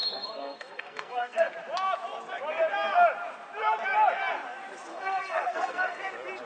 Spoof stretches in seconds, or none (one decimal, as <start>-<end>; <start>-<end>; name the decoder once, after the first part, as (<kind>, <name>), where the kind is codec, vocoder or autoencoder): 0.0-1.5 (codec, SNAC); 4.9-6.0